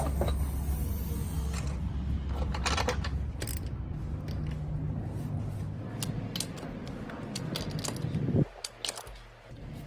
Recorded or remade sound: recorded